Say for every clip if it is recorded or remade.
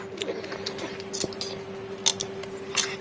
recorded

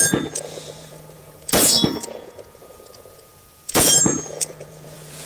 remade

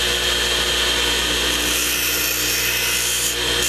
recorded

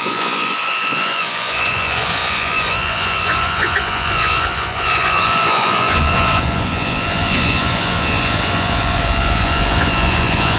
remade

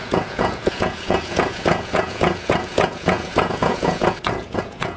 remade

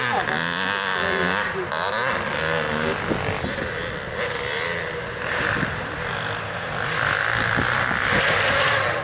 recorded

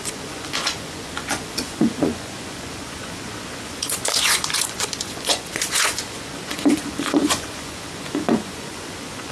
remade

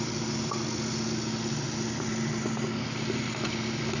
recorded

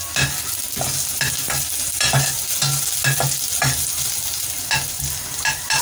recorded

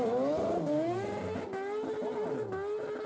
recorded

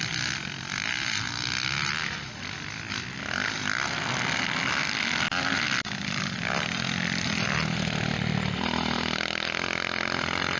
recorded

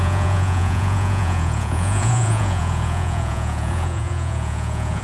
remade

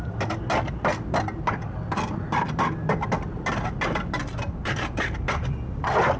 recorded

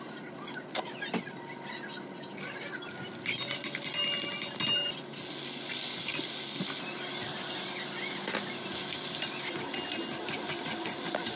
recorded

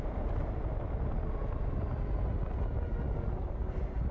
recorded